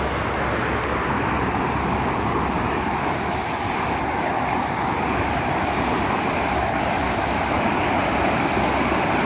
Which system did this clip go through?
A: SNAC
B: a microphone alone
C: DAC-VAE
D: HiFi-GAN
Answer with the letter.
B